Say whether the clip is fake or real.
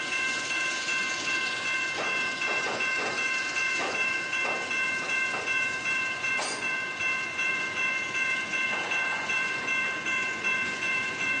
fake